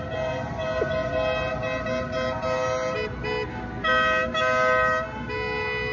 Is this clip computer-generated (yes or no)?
no